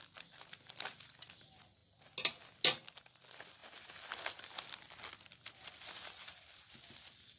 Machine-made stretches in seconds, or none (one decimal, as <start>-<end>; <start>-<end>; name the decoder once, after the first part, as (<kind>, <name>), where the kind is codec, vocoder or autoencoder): none